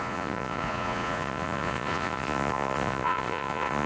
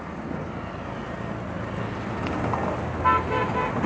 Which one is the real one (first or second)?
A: second